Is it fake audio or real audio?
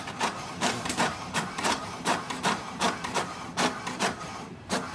fake